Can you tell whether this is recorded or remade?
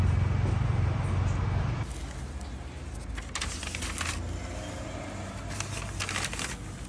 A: recorded